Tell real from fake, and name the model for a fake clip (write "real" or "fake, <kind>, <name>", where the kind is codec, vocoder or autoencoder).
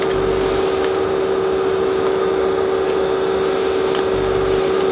real